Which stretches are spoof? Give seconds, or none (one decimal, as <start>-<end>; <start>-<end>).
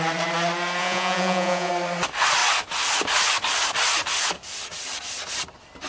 0.8-1.7